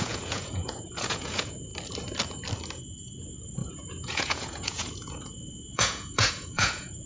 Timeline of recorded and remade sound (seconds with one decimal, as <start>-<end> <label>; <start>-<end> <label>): 0.0-1.7 remade; 1.7-3.2 recorded; 3.2-7.1 remade